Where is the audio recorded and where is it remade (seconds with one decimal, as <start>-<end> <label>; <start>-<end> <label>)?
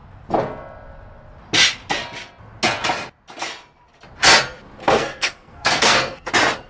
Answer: 0.0-4.8 recorded; 4.8-6.3 remade; 6.3-6.7 recorded